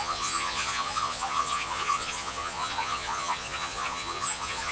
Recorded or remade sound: remade